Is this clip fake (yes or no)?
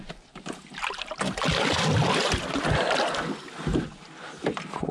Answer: no